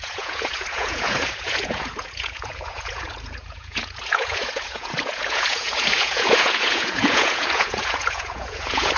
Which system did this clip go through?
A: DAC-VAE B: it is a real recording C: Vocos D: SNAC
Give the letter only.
C